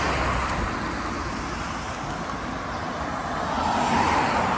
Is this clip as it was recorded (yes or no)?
yes